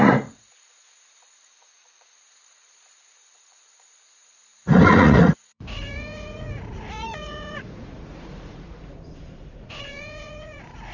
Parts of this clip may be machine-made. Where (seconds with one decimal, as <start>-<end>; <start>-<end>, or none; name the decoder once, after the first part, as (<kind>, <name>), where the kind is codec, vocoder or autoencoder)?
0.0-10.9 (vocoder, Vocos)